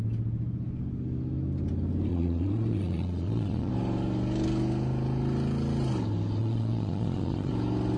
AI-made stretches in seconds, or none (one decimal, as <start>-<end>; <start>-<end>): 2.1-3.7; 6.4-7.5

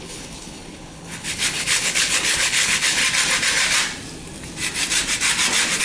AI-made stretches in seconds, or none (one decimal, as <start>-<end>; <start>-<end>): 0.0-3.0